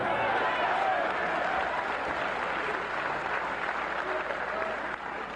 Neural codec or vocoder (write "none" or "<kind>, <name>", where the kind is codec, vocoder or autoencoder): none